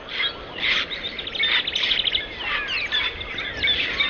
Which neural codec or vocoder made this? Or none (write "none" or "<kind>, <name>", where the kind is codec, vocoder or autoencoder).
none